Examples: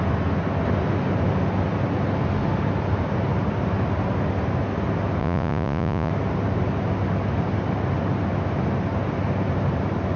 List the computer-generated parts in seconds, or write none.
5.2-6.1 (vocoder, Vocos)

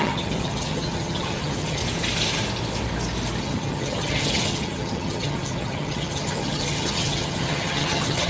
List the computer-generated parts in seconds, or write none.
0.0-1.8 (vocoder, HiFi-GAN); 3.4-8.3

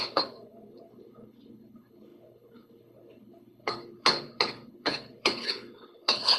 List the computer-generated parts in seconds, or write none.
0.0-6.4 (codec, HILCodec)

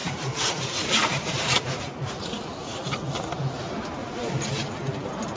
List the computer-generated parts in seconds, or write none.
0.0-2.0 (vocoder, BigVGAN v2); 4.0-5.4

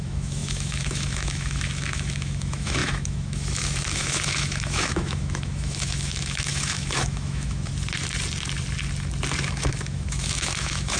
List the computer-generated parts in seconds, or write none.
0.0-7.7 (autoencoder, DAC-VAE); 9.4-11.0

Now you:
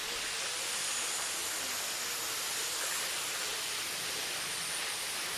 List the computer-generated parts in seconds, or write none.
none

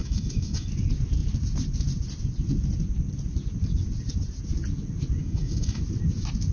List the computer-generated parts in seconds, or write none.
0.0-0.7 (autoencoder, DAC-VAE); 5.2-5.8

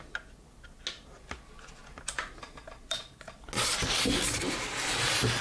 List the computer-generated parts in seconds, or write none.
none